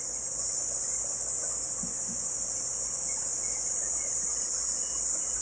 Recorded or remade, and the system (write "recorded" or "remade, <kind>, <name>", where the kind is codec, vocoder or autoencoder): recorded